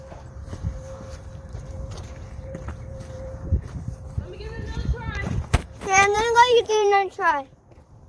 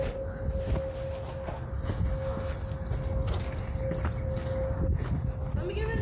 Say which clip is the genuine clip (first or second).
second